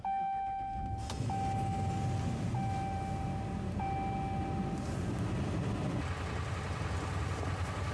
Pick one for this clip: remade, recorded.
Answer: recorded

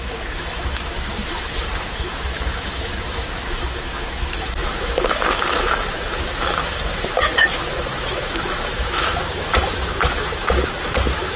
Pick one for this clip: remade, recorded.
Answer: remade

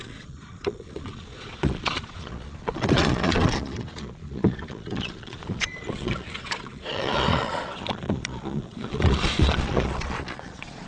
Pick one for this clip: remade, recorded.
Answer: remade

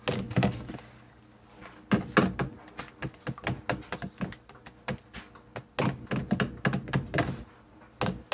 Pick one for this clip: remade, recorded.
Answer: recorded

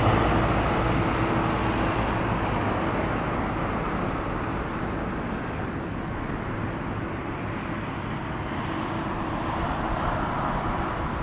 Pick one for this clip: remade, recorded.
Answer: recorded